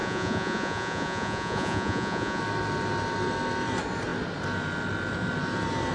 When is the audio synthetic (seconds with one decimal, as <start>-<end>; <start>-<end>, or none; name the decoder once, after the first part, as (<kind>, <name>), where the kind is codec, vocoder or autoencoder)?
0.0-2.4 (vocoder, Vocos)